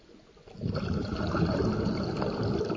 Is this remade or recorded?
recorded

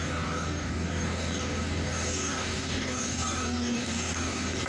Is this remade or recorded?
remade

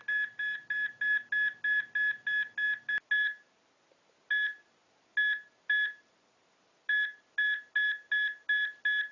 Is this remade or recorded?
recorded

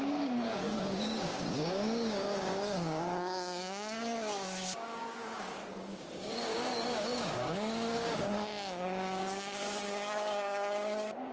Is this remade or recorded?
remade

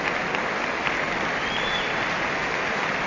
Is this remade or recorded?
recorded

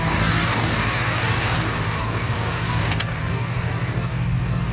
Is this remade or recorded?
remade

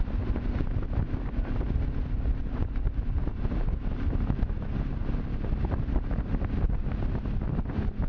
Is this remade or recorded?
recorded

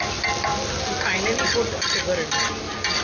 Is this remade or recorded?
recorded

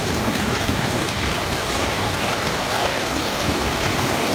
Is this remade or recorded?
remade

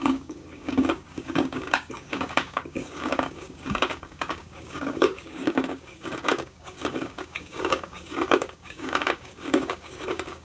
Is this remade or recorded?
remade